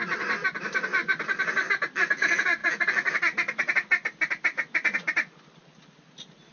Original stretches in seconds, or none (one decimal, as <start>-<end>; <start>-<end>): 0.0-6.5